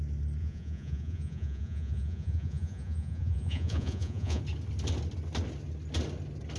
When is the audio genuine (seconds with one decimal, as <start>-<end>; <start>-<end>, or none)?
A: 0.0-0.4; 4.4-6.6